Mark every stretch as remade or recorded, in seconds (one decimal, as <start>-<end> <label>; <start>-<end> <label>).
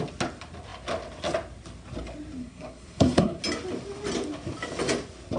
0.0-2.4 recorded; 2.4-3.4 remade; 3.4-5.4 recorded